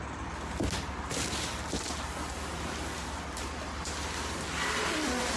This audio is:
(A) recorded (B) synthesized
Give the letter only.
A